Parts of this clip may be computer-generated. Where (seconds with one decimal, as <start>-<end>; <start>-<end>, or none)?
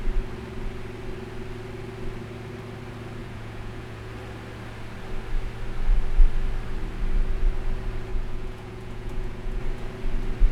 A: 3.2-4.1; 8.1-9.6